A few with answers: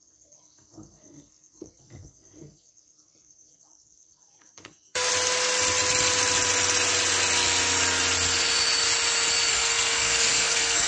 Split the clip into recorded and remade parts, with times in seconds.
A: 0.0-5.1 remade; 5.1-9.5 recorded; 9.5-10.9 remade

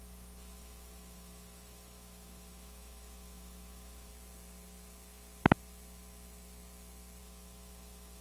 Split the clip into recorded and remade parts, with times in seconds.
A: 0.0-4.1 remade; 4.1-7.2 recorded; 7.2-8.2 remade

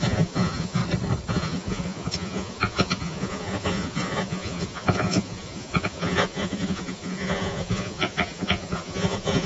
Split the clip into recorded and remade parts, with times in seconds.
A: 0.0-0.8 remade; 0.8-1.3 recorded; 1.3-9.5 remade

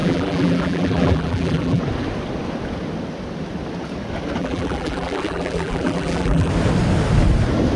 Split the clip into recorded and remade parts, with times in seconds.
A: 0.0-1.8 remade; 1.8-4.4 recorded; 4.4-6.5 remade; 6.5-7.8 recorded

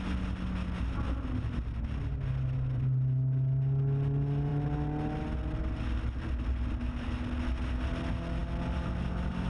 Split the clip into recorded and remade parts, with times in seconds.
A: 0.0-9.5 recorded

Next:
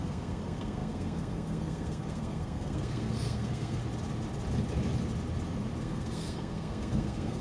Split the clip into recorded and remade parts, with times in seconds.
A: 0.0-3.8 remade; 3.8-5.8 recorded; 5.8-7.4 remade